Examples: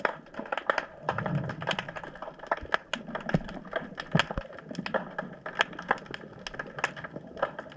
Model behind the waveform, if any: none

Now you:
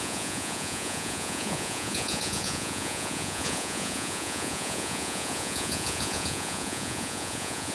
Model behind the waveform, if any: vocoder, Vocos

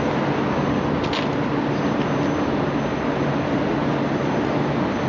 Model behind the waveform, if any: none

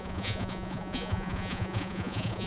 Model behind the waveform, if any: vocoder, Vocos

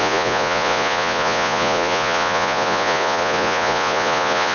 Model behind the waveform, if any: vocoder, Vocos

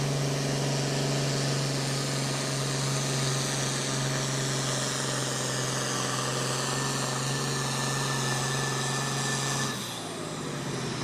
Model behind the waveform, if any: none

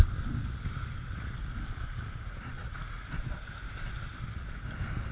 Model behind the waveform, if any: none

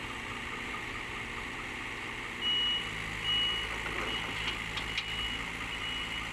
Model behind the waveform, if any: none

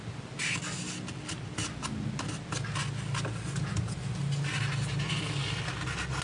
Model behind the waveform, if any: none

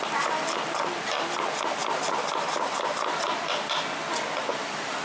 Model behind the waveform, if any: none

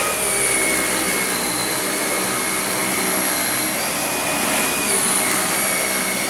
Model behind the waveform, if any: none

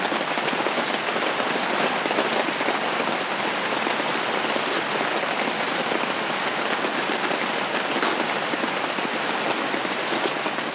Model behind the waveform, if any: none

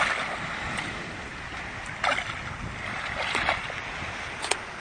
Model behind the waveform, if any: none